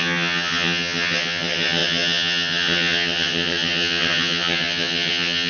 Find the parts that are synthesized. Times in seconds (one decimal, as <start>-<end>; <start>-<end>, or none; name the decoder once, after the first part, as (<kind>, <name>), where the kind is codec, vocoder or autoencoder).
0.0-5.5 (vocoder, HiFi-GAN)